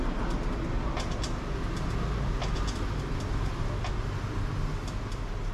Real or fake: real